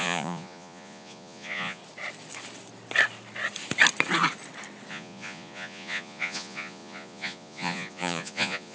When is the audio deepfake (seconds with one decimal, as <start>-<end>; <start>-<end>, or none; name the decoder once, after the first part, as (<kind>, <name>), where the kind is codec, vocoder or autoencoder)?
0.0-1.8 (vocoder, Vocos); 4.9-8.7